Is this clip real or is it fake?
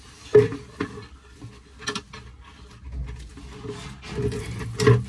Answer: real